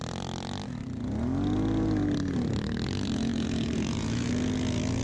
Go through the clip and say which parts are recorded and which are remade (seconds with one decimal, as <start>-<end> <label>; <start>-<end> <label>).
0.0-3.3 recorded; 3.3-4.3 remade; 4.3-5.0 recorded